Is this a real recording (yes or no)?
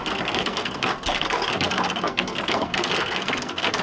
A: no